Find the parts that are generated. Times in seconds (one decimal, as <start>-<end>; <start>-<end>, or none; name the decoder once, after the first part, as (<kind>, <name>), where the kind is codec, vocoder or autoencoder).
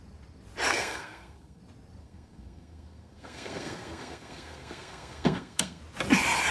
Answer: 0.7-1.6 (codec, SNAC); 2.0-5.8